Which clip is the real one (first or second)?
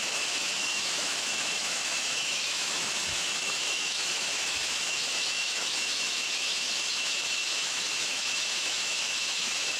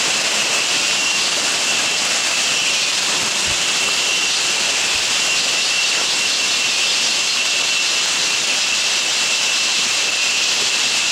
second